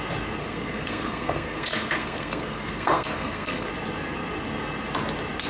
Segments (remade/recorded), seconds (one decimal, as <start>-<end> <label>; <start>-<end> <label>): 0.0-0.4 recorded; 0.4-3.7 remade; 3.7-5.5 recorded

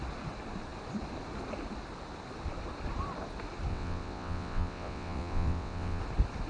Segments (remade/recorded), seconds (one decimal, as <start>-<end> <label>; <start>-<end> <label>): 0.0-3.7 recorded; 3.7-6.0 remade; 6.0-6.5 recorded

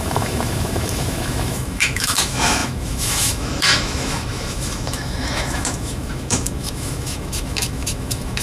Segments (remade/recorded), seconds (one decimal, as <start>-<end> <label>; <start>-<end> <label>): 0.0-8.4 remade

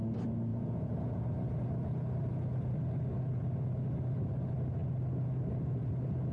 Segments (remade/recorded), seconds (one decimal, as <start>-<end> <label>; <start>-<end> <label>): 0.0-0.5 recorded; 0.5-1.2 remade; 1.2-6.3 recorded